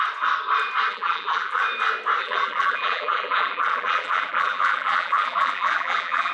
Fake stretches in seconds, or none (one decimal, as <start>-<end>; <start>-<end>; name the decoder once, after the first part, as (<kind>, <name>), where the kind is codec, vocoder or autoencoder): 0.9-1.6 (vocoder, BigVGAN v2); 2.2-6.3